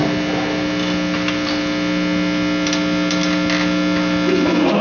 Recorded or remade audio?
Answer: recorded